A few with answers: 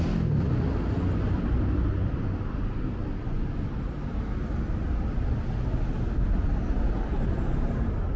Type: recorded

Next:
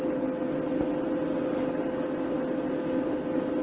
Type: recorded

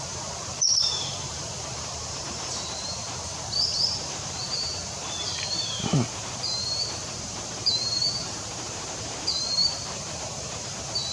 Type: remade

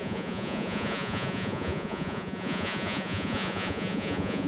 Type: remade